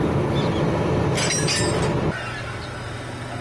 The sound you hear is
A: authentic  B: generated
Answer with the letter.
A